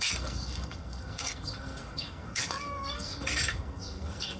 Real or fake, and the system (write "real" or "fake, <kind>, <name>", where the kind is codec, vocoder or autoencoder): fake, codec, SNAC